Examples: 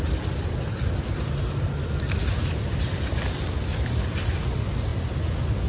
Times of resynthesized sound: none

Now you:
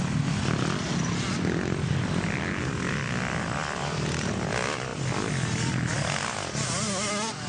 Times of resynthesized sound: none

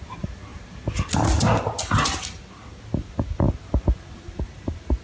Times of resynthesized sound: none

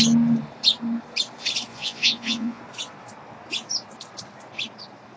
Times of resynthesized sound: 1.7-2.6 (vocoder, Vocos)

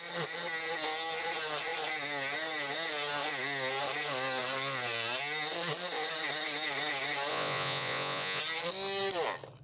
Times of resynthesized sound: 7.3-8.4 (vocoder, Vocos)

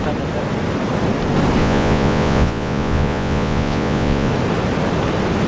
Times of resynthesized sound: 1.6-4.3 (vocoder, Vocos)

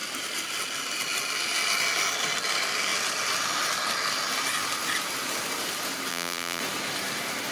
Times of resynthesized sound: 6.1-6.6 (vocoder, BigVGAN v2)